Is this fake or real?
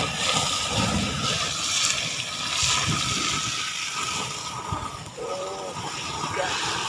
real